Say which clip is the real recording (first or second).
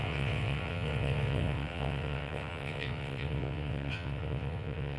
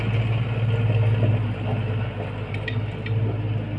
second